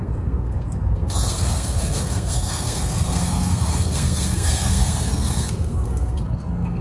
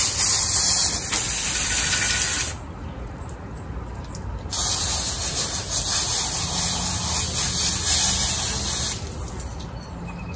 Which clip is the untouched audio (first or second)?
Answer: second